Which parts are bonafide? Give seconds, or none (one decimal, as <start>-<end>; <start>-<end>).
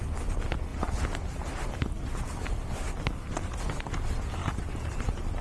0.0-5.4